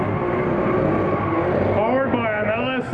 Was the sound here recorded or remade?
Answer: recorded